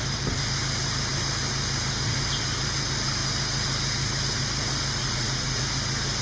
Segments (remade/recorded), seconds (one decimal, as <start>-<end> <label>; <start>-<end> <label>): 0.0-5.0 recorded; 5.0-5.6 remade; 5.6-6.2 recorded